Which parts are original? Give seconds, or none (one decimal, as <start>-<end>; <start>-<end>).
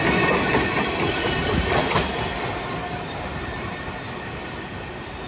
0.0-1.4; 2.0-2.8; 3.9-5.3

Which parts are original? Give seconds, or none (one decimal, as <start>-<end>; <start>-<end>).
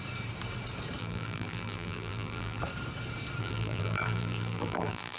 0.0-1.0; 2.6-3.4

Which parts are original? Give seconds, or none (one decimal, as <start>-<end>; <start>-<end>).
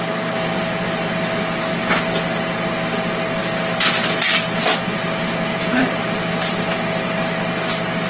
0.0-8.1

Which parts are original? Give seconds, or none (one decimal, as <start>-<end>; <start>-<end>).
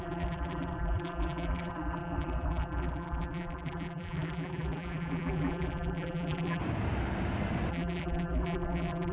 6.6-7.7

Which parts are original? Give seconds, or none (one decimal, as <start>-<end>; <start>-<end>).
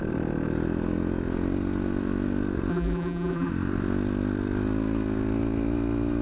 0.0-2.7; 3.5-6.2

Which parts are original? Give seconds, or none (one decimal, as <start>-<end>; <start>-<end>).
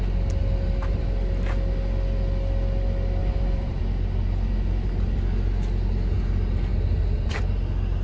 0.0-3.2; 3.8-6.7; 7.4-8.0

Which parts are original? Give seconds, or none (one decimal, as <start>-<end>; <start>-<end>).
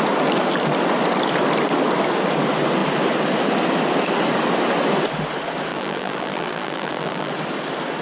0.0-5.7; 7.3-8.0